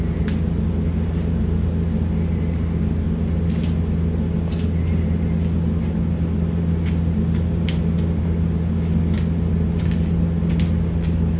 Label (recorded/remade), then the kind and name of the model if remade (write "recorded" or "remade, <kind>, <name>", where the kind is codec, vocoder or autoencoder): recorded